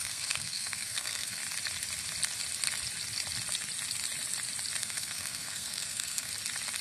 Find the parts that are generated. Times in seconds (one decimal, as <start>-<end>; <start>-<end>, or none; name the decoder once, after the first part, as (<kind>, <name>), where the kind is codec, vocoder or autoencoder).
0.0-1.4 (codec, SNAC); 4.8-6.3